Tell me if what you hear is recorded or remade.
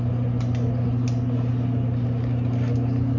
recorded